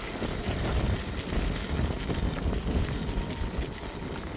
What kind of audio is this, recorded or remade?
recorded